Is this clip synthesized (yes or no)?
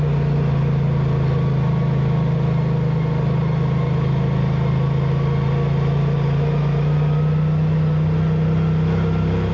no